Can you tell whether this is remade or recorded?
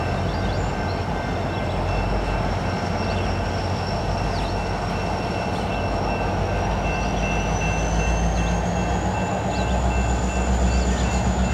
recorded